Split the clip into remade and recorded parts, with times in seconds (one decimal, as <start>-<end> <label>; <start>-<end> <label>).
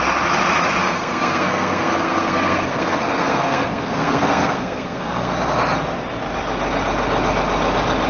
0.0-0.8 recorded; 0.8-5.3 remade; 5.3-8.1 recorded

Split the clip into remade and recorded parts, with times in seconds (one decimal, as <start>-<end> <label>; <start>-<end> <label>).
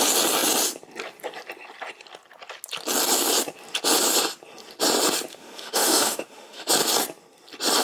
0.0-5.3 recorded; 5.3-6.7 remade; 6.7-7.8 recorded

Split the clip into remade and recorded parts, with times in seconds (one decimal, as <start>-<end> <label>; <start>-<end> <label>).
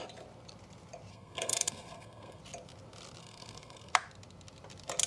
0.0-1.1 recorded; 1.1-2.4 remade; 2.4-3.2 recorded; 3.2-3.9 remade; 3.9-5.1 recorded